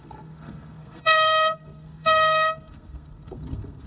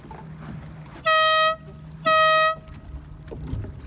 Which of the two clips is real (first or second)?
second